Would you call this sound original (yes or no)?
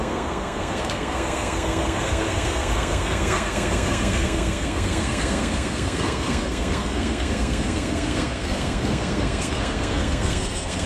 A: no